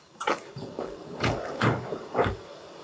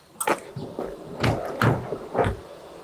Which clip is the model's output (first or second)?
first